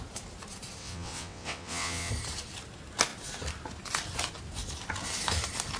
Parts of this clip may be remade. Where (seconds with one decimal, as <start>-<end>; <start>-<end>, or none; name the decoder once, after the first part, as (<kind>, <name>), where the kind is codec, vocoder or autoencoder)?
0.8-2.1 (vocoder, WaveNeXt)